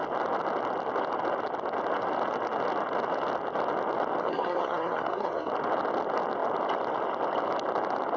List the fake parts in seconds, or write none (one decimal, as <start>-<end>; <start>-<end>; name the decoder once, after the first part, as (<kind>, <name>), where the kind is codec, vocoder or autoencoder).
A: 4.2-5.5 (codec, SNAC)